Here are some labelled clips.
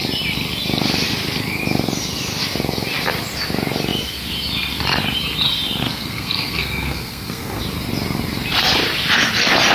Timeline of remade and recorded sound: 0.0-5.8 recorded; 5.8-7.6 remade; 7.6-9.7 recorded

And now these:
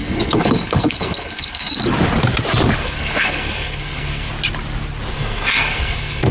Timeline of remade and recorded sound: 0.0-1.8 remade; 1.8-2.8 recorded; 2.8-4.3 remade; 4.3-5.1 recorded; 5.1-6.3 remade

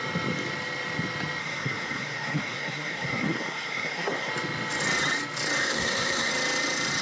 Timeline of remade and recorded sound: 0.0-1.4 recorded; 1.4-4.3 remade; 4.3-5.6 recorded; 5.6-6.3 remade; 6.3-7.0 recorded

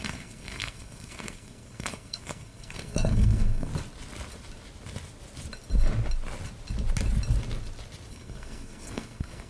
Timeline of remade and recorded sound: 0.0-3.7 remade; 3.7-8.1 recorded; 8.1-9.5 remade